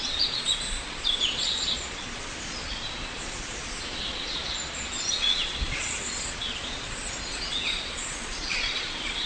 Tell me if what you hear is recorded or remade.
remade